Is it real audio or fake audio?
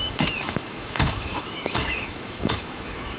fake